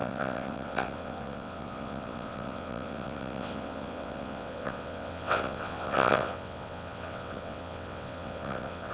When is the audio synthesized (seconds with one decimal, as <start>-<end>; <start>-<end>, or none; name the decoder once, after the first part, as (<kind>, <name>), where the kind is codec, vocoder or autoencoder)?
0.0-8.9 (vocoder, WaveNeXt)